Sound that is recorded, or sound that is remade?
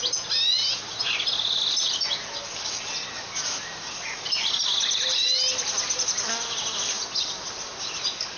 recorded